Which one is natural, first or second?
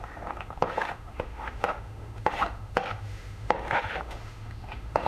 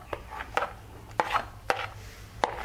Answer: second